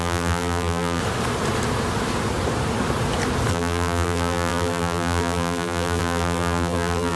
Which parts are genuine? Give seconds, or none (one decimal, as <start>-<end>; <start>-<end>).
1.0-3.5